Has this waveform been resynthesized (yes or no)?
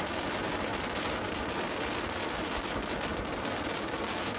no